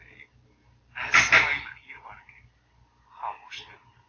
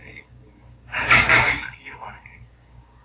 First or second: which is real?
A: first